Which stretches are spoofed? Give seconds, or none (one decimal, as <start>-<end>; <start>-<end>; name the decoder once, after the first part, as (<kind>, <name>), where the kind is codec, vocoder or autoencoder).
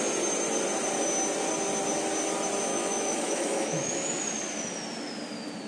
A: 2.7-4.2 (autoencoder, DAC-VAE)